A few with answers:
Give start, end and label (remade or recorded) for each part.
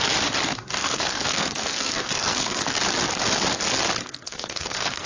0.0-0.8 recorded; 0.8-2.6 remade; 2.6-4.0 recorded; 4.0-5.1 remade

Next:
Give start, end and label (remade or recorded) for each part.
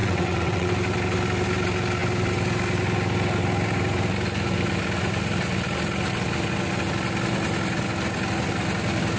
0.0-0.7 remade; 0.7-9.2 recorded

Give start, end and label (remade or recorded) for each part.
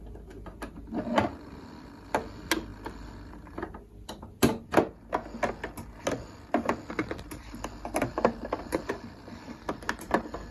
0.0-10.5 recorded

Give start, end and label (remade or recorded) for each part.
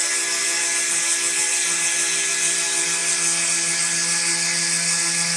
0.0-5.4 recorded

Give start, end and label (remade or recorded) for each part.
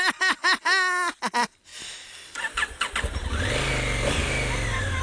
0.0-5.0 recorded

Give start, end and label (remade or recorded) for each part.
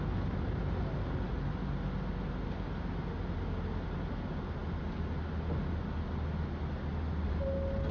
0.0-7.9 recorded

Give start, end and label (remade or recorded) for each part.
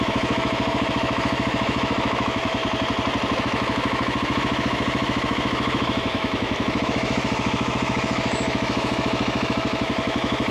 0.0-2.6 remade; 2.6-3.4 recorded; 3.4-10.5 remade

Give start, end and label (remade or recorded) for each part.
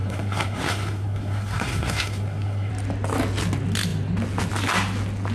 0.0-2.7 remade; 2.7-5.3 recorded